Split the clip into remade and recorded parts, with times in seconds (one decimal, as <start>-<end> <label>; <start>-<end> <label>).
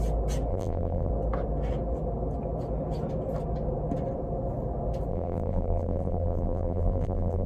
0.0-0.5 recorded; 0.5-1.1 remade; 1.1-5.1 recorded; 5.1-7.5 remade